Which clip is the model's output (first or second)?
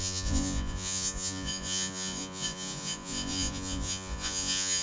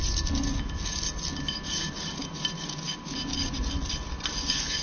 first